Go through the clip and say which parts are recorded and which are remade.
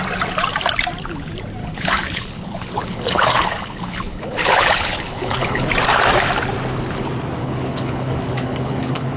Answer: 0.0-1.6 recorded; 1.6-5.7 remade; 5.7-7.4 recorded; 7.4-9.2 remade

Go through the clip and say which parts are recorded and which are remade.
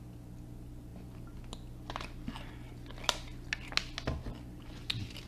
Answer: 0.0-5.3 recorded